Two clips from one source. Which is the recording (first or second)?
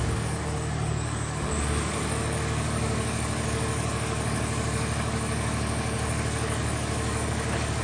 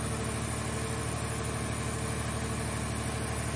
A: second